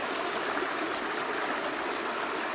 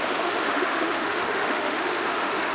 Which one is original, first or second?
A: first